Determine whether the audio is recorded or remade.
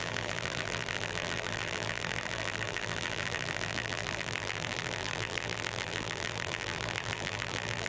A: remade